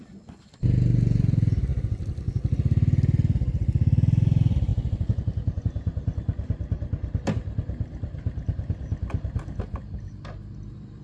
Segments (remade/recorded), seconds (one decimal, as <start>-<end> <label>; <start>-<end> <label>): 0.0-11.0 recorded